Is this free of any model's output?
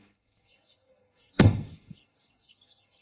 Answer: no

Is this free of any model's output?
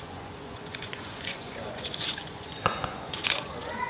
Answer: no